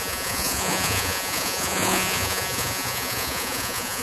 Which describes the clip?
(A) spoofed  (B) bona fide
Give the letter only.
A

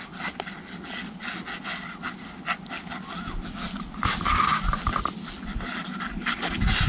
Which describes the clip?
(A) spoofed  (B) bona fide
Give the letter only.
B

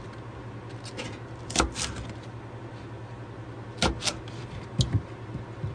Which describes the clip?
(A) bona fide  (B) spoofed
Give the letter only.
A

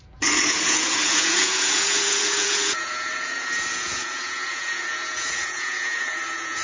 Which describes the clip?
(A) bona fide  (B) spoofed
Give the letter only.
B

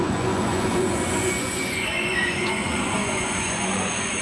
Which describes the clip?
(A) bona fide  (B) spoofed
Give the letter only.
B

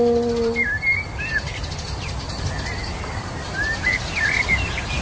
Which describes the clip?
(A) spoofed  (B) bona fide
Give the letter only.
B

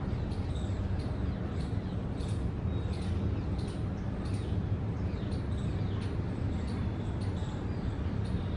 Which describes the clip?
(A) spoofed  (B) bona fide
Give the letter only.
B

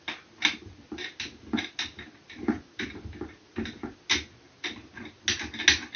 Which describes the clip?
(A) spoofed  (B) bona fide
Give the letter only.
B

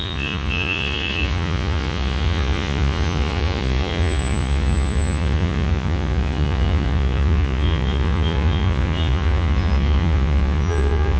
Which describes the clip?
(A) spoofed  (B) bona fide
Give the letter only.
A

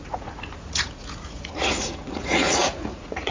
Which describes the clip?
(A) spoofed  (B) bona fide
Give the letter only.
A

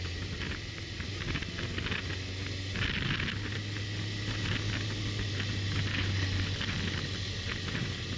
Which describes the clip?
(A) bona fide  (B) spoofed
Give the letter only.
A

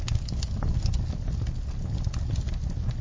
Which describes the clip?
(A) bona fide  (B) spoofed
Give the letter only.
A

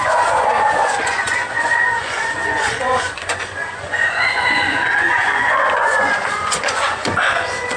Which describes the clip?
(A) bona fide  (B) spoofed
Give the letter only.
B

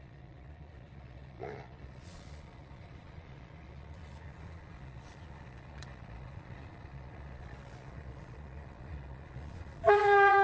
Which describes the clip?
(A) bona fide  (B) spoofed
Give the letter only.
B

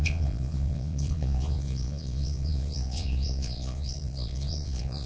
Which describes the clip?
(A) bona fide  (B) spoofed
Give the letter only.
B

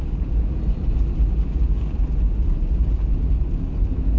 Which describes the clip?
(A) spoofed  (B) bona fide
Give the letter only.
B